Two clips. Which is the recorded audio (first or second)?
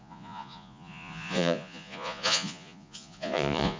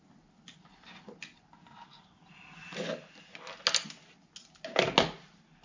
second